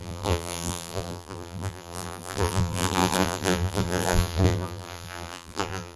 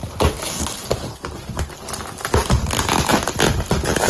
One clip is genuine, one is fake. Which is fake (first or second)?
first